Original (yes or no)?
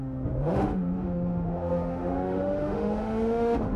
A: no